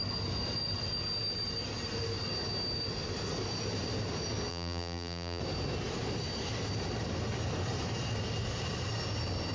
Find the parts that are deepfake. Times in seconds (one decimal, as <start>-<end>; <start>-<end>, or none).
4.5-5.4